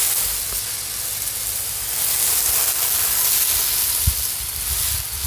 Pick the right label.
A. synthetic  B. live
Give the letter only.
B